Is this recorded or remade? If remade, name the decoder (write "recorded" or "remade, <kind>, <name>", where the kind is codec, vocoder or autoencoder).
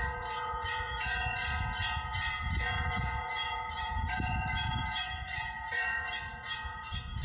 remade, vocoder, Vocos